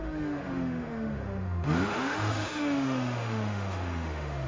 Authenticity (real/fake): fake